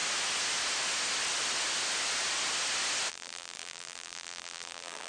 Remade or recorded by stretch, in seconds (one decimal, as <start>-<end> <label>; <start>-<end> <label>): 0.0-3.1 recorded; 3.1-5.1 remade